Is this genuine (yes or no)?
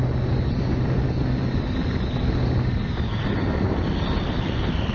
yes